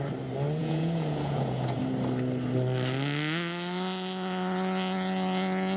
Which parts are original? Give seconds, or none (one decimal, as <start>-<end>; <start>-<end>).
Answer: 0.0-0.6; 1.8-5.8